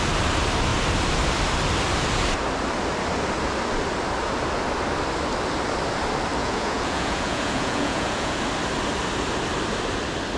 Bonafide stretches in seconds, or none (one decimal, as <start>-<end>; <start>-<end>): 0.0-6.4; 8.4-10.4